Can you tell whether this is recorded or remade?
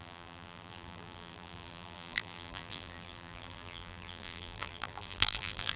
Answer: remade